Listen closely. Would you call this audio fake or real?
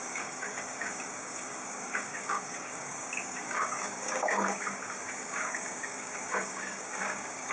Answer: fake